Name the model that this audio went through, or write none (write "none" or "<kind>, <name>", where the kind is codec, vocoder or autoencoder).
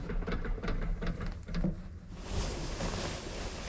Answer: none